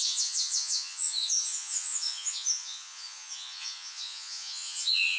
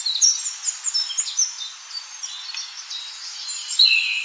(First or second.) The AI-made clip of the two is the first